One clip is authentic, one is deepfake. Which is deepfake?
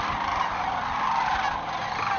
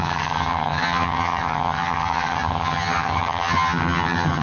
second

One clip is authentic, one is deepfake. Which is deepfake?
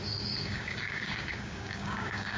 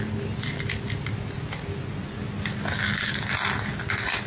first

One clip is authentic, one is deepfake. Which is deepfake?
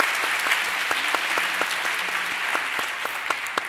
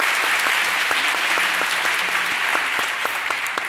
second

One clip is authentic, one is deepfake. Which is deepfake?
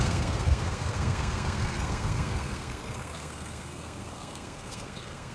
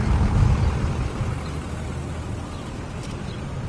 first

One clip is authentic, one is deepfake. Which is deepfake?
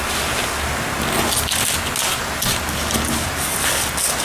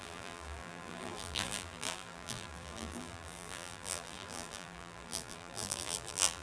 second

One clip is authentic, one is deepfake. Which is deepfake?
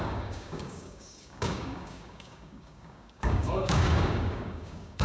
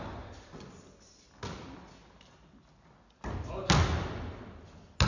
first